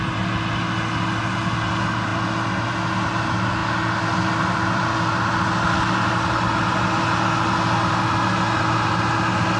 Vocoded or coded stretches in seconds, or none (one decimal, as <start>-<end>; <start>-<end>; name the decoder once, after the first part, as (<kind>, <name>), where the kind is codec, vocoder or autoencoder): none